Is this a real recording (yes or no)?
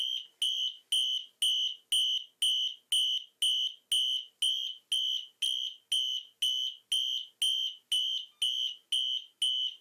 yes